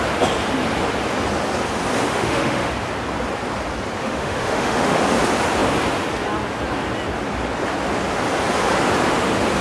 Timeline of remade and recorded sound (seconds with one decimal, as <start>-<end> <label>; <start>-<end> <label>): 0.0-2.1 recorded; 2.1-2.7 remade; 2.7-4.0 recorded; 4.0-5.0 remade; 5.0-9.6 recorded